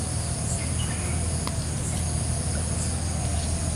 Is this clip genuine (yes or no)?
yes